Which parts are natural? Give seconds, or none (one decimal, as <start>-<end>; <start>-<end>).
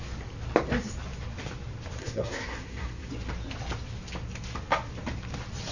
0.0-2.0; 3.1-5.7